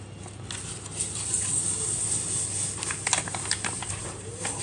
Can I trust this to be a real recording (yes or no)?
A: yes